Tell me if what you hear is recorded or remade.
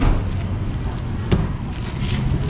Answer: recorded